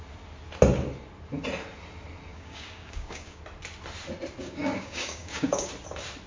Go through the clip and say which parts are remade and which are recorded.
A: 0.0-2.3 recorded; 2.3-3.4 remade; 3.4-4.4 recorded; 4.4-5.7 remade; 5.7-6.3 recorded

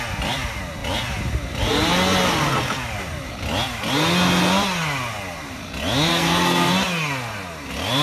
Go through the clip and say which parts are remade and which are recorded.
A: 0.0-6.1 recorded; 6.1-6.7 remade; 6.7-8.0 recorded